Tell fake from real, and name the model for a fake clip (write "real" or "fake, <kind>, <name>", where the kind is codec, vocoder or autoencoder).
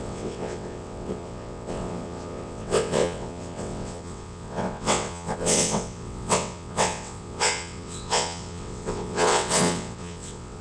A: fake, vocoder, WaveNeXt